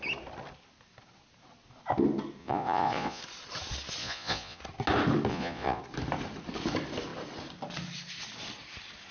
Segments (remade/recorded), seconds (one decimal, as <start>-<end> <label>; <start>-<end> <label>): 0.0-2.4 recorded; 2.4-3.2 remade; 3.2-4.0 recorded; 4.0-4.6 remade; 4.6-5.3 recorded; 5.3-5.8 remade; 5.8-9.1 recorded